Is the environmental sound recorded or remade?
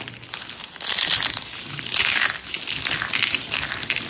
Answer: recorded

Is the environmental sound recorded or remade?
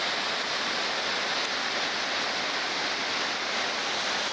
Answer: recorded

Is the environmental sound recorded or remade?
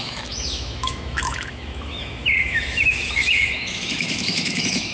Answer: remade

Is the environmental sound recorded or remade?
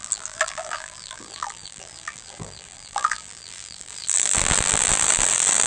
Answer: remade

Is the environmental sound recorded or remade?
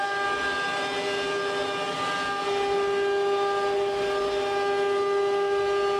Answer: recorded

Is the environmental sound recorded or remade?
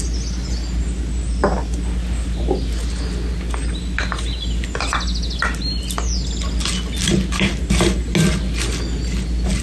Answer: recorded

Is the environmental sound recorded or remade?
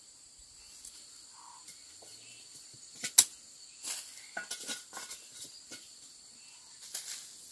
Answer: recorded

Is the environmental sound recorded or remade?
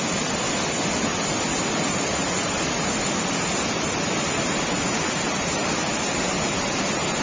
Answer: recorded